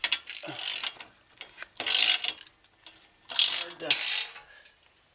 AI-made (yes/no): no